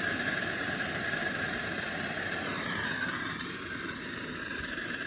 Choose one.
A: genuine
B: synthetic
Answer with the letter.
B